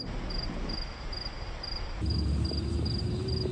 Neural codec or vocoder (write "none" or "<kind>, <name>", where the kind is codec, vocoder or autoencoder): none